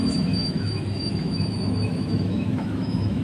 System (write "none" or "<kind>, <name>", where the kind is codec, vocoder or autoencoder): autoencoder, DAC-VAE